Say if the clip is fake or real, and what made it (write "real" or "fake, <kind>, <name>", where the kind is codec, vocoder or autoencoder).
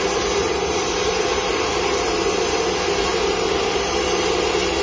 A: real